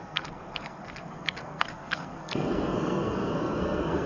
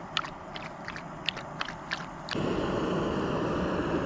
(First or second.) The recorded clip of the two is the second